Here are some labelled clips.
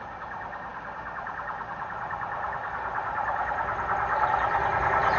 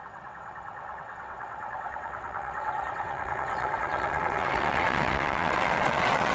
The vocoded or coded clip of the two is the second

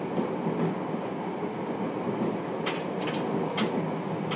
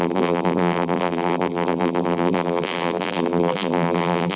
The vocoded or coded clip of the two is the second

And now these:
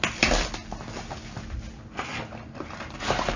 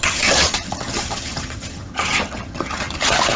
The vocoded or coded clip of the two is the second